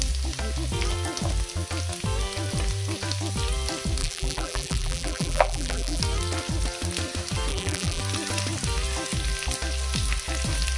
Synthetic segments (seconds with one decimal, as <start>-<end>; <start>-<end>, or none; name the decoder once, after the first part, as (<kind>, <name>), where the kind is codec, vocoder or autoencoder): 4.0-6.0 (vocoder, BigVGAN v2); 7.5-8.0